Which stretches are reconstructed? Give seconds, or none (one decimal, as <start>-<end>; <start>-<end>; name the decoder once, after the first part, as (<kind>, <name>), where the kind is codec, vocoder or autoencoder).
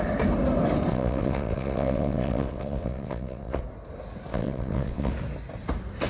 0.9-3.6 (vocoder, WaveNeXt); 4.3-5.1